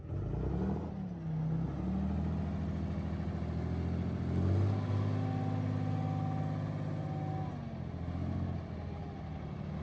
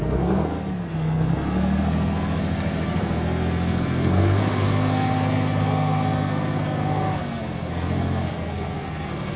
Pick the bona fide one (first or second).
first